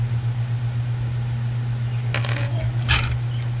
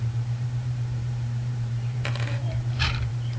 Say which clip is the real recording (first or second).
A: first